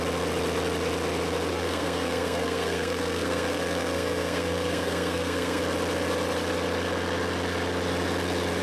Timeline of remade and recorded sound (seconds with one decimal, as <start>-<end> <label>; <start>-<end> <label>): 0.0-1.5 recorded; 1.5-5.6 remade; 5.6-8.6 recorded